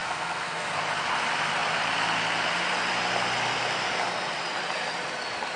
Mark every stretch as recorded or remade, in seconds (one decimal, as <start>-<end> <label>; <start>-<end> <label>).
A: 0.0-0.8 remade; 0.8-5.6 recorded